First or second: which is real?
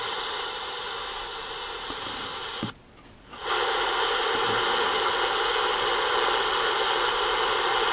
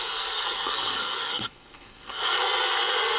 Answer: first